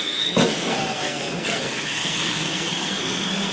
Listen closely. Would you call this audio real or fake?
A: fake